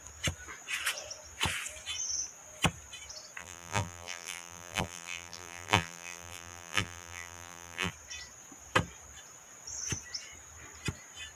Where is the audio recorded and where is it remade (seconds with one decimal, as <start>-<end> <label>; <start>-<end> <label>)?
0.0-3.4 recorded; 3.4-7.9 remade; 7.9-11.3 recorded